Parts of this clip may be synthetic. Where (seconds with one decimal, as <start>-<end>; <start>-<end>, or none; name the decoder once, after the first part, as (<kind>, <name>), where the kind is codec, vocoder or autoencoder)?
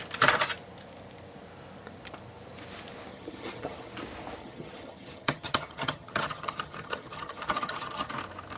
3.1-3.9 (vocoder, HiFi-GAN); 4.4-8.1